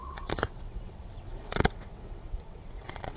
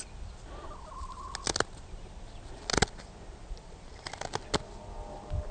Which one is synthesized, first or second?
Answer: first